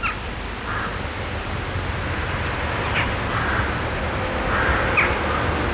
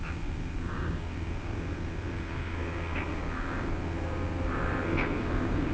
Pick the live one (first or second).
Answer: first